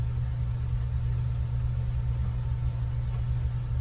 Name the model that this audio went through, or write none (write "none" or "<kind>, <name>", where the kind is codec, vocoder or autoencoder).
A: none